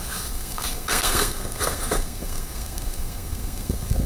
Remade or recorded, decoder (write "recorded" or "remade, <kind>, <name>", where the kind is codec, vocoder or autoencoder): remade, codec, SNAC